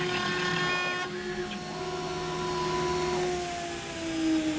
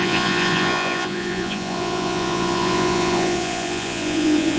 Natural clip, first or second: first